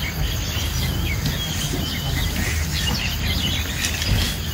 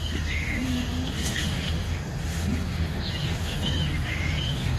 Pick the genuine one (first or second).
first